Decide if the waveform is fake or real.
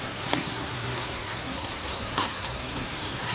fake